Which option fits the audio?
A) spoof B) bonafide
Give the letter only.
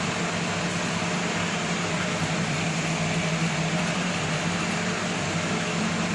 A